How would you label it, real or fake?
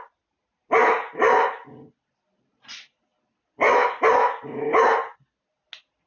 real